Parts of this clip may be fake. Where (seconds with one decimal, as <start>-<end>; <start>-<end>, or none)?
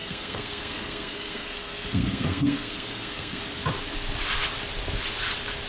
0.0-3.4